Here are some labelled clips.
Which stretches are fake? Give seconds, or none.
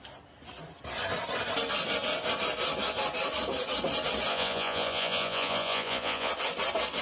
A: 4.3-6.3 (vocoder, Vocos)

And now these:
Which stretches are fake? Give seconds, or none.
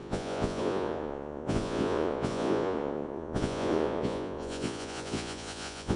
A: 0.0-6.0 (vocoder, Vocos)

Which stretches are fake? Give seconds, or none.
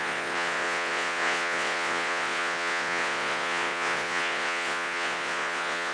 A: 0.0-5.9 (vocoder, Vocos)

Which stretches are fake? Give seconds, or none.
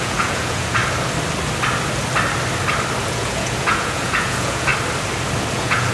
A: 0.0-0.8 (vocoder, Vocos); 3.0-4.7; 5.5-5.9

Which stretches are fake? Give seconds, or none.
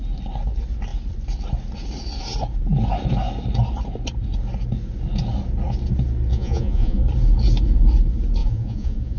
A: 6.3-7.0 (vocoder, Vocos); 8.4-9.2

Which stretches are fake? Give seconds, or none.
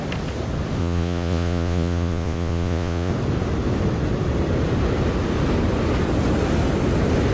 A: 0.8-3.1 (vocoder, Vocos)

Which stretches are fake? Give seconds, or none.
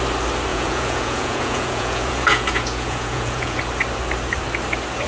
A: 0.5-3.6 (vocoder, Vocos)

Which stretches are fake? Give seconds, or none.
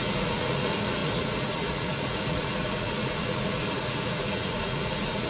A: 0.0-5.3 (vocoder, Vocos)